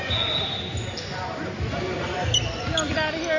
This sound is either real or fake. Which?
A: real